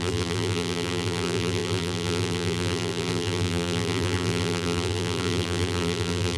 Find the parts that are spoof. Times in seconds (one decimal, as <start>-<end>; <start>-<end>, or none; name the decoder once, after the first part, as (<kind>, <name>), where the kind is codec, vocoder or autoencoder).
0.0-6.4 (vocoder, BigVGAN v2)